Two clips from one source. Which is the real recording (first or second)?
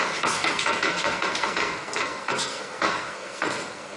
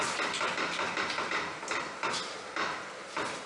second